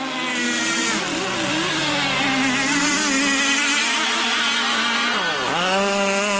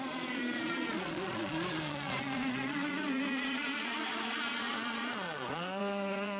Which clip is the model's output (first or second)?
second